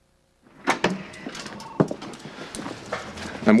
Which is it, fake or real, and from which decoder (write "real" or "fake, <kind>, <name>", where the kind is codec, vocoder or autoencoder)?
real